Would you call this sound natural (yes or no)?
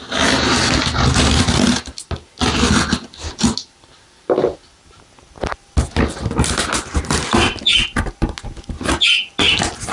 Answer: yes